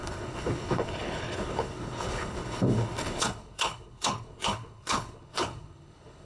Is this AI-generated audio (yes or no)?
yes